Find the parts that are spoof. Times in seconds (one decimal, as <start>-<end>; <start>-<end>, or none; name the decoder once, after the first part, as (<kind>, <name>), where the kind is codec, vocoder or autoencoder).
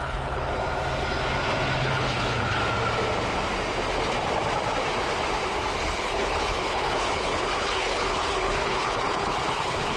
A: 0.0-0.6 (codec, HILCodec); 1.8-2.6; 5.8-10.0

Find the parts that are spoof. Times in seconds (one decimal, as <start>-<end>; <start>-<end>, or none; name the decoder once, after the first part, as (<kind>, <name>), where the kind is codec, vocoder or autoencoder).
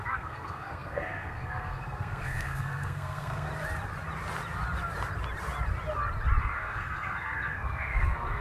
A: 0.0-3.5 (codec, SNAC); 6.4-8.4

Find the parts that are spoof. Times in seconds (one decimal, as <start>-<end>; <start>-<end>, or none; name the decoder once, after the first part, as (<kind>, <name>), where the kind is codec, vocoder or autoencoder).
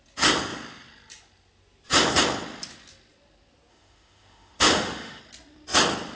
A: 3.7-5.2 (autoencoder, DAC-VAE)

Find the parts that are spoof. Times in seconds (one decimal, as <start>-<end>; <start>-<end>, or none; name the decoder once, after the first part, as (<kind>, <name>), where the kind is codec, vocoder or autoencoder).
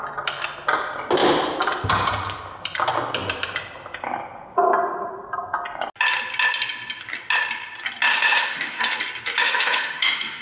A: 8.1-8.8 (autoencoder, DAC-VAE); 9.4-10.4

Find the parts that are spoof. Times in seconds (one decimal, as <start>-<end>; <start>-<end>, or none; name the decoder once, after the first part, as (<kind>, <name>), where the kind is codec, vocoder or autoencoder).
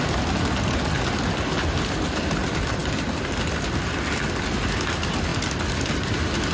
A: none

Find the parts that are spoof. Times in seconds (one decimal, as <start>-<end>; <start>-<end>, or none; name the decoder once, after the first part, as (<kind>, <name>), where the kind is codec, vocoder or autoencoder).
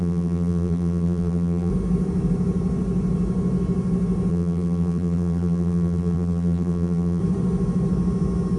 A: 0.0-1.7 (vocoder, BigVGAN v2); 4.3-7.2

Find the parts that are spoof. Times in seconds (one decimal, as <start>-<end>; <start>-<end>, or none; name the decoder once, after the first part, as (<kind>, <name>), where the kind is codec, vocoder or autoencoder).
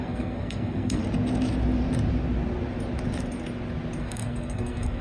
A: 0.0-1.0 (codec, SNAC); 4.0-5.0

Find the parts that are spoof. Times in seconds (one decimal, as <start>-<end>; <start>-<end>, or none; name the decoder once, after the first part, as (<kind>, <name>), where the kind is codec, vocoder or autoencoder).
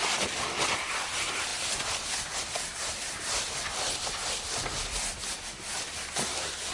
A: none